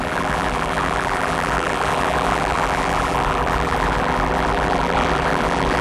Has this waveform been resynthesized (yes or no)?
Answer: yes